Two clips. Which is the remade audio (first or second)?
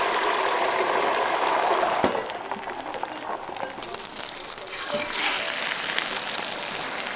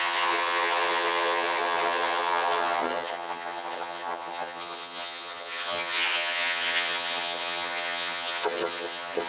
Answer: second